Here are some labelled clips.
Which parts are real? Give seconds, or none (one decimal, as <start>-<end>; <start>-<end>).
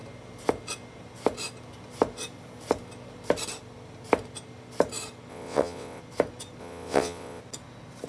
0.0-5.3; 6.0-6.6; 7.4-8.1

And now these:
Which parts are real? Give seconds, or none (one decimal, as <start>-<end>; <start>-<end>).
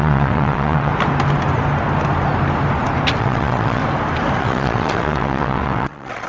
0.9-3.2; 3.8-4.4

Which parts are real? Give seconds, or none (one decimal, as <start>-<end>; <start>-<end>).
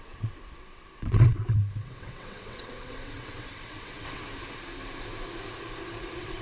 4.2-6.0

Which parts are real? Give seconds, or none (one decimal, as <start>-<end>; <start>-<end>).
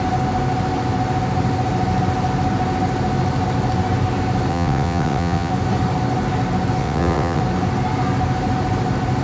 0.0-4.5; 5.5-6.8; 7.4-9.2